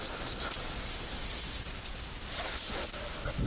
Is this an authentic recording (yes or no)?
yes